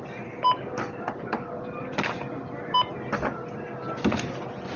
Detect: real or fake real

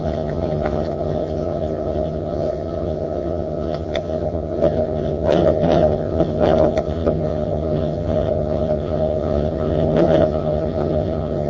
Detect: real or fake fake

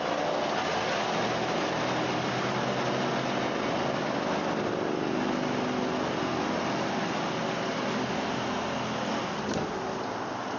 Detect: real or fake real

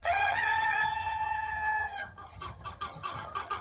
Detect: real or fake fake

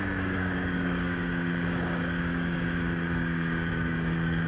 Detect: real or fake fake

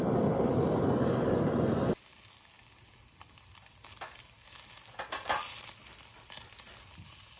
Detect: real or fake real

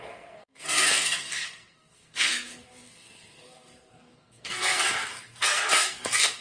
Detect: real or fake fake